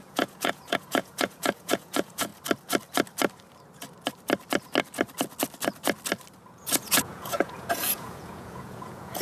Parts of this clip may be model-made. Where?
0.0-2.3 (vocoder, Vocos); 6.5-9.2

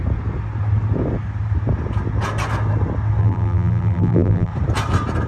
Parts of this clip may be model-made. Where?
3.2-4.5 (vocoder, BigVGAN v2)